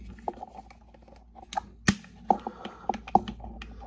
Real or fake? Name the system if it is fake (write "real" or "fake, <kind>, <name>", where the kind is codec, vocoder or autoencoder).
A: real